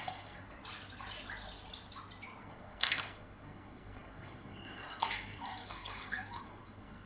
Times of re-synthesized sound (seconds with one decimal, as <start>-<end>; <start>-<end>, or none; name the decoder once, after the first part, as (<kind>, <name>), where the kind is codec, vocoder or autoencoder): 0.0-0.6 (codec, SNAC); 2.4-7.1